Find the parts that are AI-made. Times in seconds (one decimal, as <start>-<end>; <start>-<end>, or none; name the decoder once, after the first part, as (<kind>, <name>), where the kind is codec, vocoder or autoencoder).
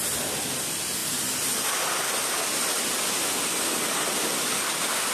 none